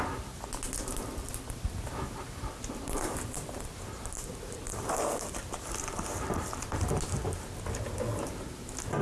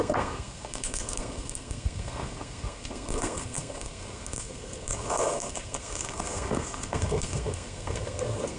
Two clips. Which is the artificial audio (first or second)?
second